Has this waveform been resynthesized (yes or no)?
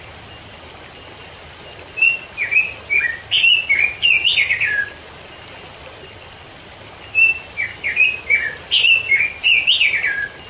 no